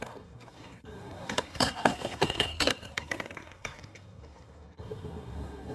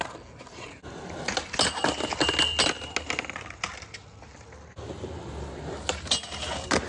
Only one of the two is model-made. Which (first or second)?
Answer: first